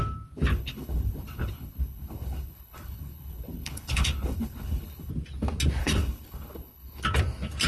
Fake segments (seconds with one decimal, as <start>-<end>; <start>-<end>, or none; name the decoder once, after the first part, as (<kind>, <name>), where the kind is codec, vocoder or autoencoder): 0.5-5.1 (codec, HILCodec); 5.8-7.0